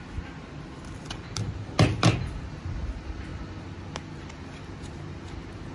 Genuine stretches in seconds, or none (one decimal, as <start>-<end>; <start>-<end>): 0.0-5.7

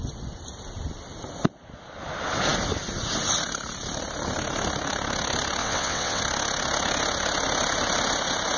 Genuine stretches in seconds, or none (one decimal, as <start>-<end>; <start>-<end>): 0.0-5.6; 6.2-8.6

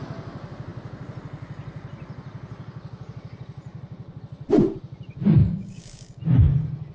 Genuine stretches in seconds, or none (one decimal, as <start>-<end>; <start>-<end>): 0.0-5.4; 6.2-6.9

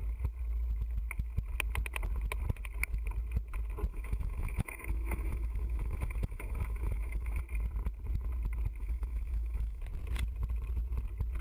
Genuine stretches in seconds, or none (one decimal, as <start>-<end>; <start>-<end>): 0.0-3.9; 7.4-8.8; 9.8-11.4

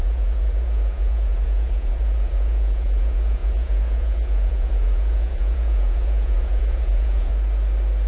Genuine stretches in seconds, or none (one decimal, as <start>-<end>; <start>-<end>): 7.3-8.1

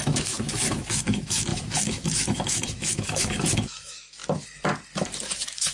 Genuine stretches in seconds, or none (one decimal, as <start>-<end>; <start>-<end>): 4.2-5.2

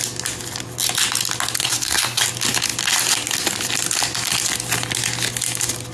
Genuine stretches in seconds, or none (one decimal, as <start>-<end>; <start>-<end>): 0.0-1.6; 2.2-5.9

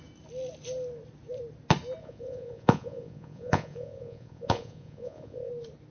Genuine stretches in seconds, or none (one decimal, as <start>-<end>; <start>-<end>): 0.0-2.0; 5.5-5.9